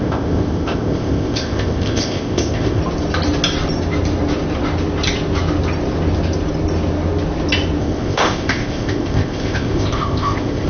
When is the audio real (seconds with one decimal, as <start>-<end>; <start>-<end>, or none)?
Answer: 2.8-7.8